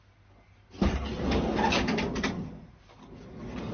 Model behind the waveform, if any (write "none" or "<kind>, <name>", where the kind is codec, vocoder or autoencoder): none